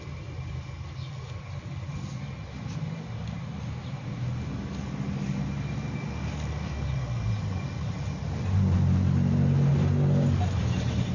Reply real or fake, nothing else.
real